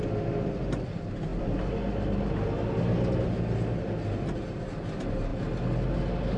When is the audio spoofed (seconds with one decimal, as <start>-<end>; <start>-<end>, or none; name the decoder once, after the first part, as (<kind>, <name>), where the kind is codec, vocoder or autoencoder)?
none